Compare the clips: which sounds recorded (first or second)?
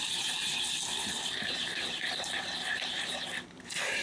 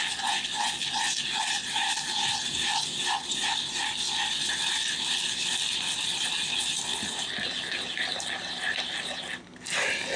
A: second